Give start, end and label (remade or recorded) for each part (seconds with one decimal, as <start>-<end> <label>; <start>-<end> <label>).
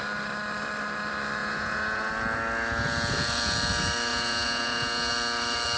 0.0-1.4 recorded; 1.4-2.1 remade; 2.1-4.1 recorded; 4.1-5.1 remade; 5.1-5.8 recorded